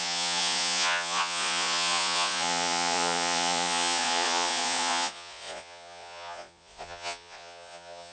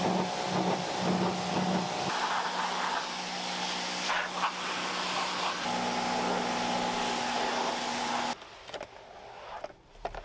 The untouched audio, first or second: second